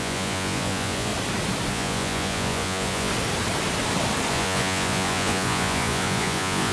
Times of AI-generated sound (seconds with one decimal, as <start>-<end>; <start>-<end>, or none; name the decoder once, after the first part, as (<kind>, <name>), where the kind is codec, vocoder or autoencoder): 0.0-1.1 (vocoder, Vocos); 1.7-3.1; 4.3-6.7